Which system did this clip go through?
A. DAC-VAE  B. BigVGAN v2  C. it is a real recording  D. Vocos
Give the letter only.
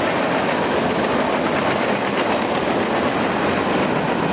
C